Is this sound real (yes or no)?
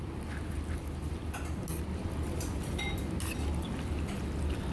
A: yes